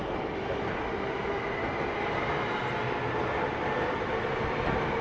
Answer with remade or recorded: recorded